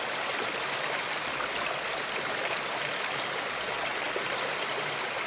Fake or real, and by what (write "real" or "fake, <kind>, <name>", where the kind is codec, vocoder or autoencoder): real